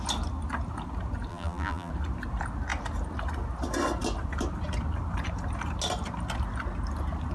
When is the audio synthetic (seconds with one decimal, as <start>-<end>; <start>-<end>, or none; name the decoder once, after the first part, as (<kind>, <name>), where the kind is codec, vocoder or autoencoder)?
1.3-1.9 (vocoder, BigVGAN v2)